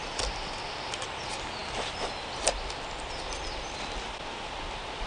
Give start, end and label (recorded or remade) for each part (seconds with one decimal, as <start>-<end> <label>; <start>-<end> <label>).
0.0-5.1 recorded

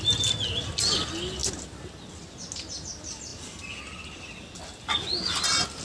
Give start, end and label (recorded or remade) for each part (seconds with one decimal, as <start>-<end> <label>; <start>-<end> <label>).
0.0-5.8 recorded